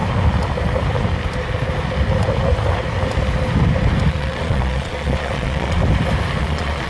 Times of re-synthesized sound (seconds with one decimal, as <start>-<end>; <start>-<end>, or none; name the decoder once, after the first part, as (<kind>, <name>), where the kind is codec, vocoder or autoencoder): 4.1-5.8 (vocoder, Vocos); 6.4-6.9